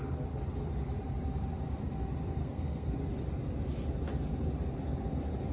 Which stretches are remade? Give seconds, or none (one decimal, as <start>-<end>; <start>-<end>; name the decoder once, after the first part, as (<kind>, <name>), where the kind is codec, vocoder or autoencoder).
2.4-3.0 (codec, SNAC)

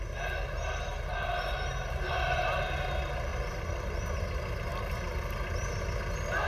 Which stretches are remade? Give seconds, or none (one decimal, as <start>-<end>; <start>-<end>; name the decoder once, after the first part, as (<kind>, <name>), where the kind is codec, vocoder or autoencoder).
3.3-4.0 (vocoder, BigVGAN v2)

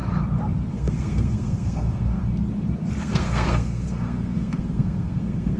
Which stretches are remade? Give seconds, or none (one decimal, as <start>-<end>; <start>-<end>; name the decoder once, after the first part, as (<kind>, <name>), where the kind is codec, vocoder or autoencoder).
0.7-2.2 (codec, SNAC); 3.0-5.6